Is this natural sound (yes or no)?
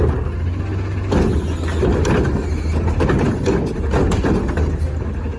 yes